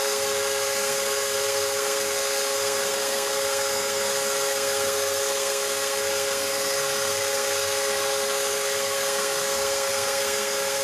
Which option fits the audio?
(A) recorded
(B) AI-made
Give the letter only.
B